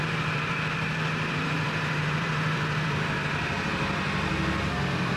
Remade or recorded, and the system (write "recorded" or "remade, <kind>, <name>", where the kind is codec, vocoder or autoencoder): remade, vocoder, BigVGAN v2